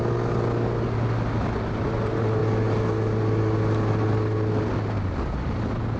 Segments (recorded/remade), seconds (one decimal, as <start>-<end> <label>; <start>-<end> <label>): 0.0-6.0 recorded